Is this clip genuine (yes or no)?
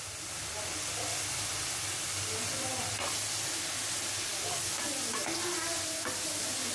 yes